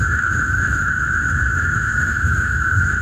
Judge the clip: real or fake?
fake